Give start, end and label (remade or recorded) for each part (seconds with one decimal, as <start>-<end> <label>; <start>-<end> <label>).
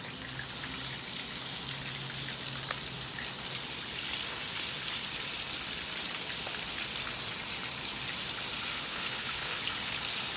0.0-8.9 recorded; 8.9-9.6 remade; 9.6-10.4 recorded